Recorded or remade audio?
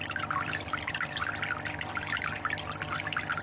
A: recorded